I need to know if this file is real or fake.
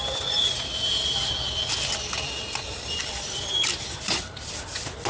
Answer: fake